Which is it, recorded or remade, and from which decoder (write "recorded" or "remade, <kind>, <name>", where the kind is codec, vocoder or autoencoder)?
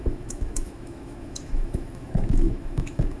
remade, autoencoder, DAC-VAE